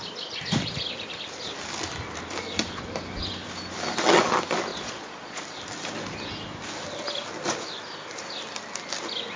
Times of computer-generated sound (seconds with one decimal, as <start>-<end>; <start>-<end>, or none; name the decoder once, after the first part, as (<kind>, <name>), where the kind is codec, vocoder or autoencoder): 4.7-5.4 (vocoder, Vocos)